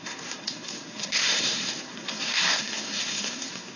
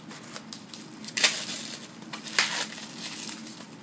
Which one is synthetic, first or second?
first